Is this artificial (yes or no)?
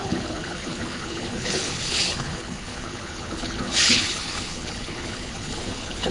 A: yes